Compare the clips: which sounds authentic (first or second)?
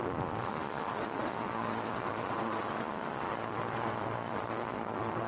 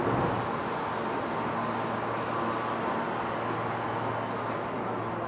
second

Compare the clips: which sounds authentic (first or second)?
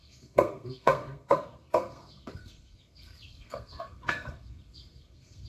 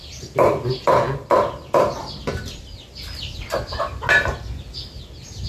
second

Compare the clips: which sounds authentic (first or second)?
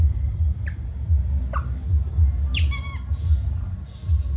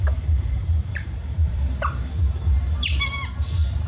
first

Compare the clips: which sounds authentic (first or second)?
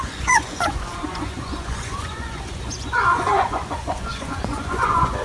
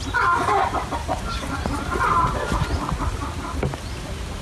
second